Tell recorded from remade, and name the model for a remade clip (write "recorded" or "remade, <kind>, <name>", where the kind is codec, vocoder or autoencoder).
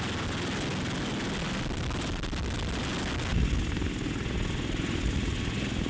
recorded